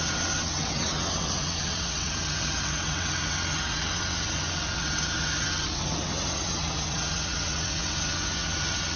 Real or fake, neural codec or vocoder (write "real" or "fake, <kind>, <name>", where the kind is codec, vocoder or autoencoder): fake, vocoder, WaveNeXt